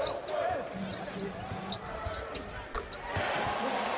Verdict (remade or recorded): recorded